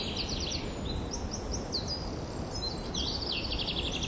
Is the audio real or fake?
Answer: real